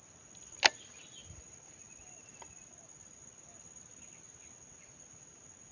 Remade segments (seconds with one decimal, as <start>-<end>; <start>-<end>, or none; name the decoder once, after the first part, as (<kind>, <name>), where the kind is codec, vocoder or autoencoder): none